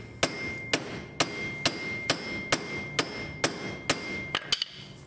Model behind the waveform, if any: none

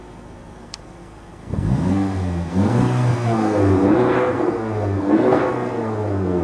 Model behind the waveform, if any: codec, SNAC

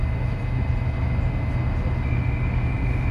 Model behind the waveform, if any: none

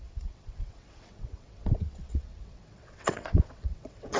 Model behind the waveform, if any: vocoder, WaveNeXt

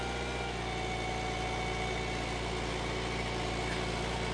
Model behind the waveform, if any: none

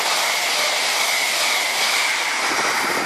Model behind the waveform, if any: none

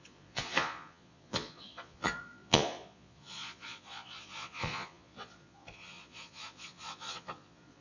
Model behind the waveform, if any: vocoder, Vocos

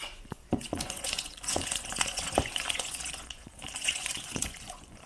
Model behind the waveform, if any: vocoder, Vocos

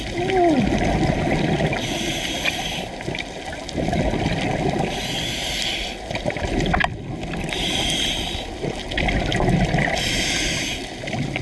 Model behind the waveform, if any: none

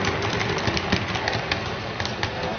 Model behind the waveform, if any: none